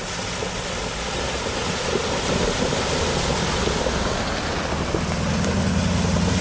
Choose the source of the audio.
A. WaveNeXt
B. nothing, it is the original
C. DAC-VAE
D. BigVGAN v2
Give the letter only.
B